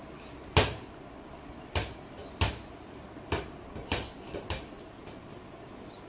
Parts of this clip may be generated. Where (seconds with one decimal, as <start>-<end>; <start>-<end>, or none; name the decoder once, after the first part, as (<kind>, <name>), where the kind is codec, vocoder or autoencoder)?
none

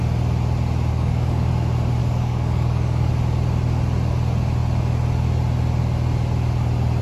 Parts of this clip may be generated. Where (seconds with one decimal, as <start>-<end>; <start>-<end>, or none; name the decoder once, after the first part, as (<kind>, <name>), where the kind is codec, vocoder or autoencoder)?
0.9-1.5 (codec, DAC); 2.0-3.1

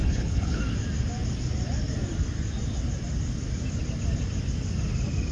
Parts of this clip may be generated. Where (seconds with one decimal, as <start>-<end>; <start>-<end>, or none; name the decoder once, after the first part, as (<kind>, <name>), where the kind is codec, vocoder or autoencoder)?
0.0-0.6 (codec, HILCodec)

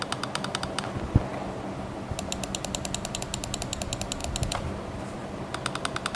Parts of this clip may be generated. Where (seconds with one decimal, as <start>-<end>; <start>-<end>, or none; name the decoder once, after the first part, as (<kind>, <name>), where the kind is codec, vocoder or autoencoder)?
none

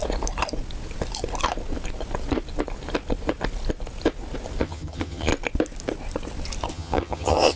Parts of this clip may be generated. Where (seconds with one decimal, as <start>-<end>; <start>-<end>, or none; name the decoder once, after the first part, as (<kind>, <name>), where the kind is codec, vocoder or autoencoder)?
4.6-5.3 (vocoder, HiFi-GAN); 6.7-7.6

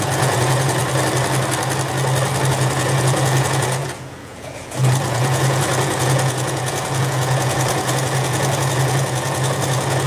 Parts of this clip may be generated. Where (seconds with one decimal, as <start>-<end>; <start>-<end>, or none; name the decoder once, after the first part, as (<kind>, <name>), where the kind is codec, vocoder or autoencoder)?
0.0-0.8 (vocoder, Vocos); 2.5-10.1